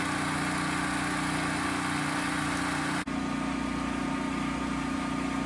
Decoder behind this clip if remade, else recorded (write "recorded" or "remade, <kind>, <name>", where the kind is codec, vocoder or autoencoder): recorded